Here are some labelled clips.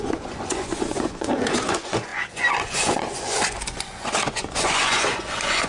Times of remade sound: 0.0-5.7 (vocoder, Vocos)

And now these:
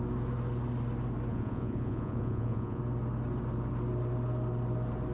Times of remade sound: 1.3-2.8 (vocoder, Vocos)

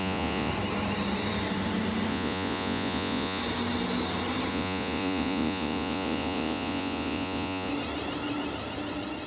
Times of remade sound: 0.0-0.5 (vocoder, Vocos); 2.1-3.4; 4.5-7.7

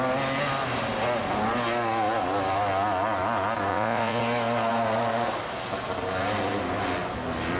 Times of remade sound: 3.7-4.2 (vocoder, Vocos)